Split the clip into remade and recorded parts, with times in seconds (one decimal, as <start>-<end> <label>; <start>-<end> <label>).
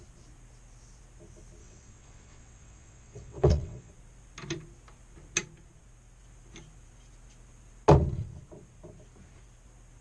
0.0-1.6 recorded; 1.6-3.9 remade; 3.9-10.0 recorded